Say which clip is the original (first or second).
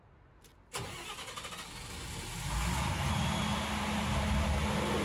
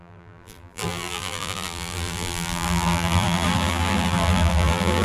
first